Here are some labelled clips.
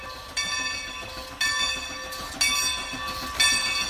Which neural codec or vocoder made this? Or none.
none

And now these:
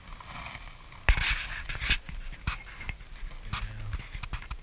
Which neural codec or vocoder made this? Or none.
none